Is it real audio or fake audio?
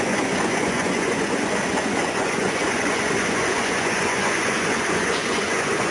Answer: fake